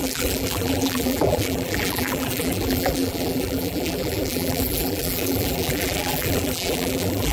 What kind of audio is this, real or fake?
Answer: fake